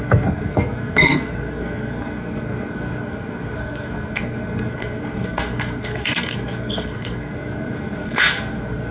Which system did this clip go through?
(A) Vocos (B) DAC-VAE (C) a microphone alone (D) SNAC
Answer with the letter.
D